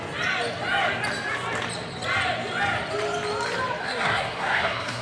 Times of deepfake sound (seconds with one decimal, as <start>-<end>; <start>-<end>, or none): 3.8-5.0